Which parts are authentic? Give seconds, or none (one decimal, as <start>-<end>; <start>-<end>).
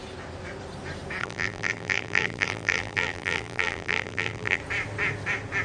0.0-1.2; 4.6-5.6